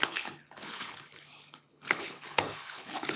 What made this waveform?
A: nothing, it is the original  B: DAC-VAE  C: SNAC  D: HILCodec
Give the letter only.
D